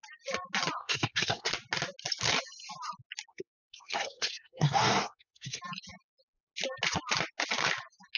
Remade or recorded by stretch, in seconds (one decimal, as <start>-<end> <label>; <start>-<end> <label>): 0.0-0.8 recorded; 0.8-1.5 remade; 1.5-3.3 recorded; 3.3-5.6 remade; 5.6-8.2 recorded